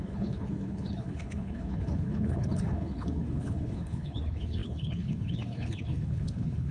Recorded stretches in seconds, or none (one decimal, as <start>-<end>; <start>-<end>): none

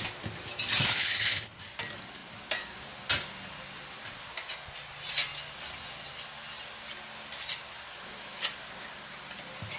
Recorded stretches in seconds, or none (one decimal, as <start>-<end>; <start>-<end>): 0.0-0.8; 1.6-9.8

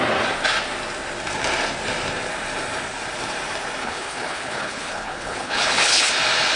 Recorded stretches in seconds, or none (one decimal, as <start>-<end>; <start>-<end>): 0.0-3.8; 6.1-6.6

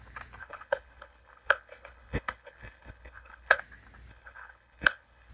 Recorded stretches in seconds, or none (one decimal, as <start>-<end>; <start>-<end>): 0.0-0.4; 3.6-4.1

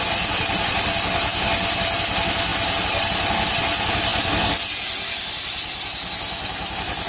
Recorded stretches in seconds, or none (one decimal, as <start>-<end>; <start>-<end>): 0.0-7.1

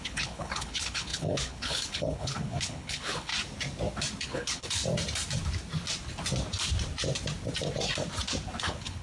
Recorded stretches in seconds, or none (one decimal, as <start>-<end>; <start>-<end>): 3.3-4.2; 4.8-8.6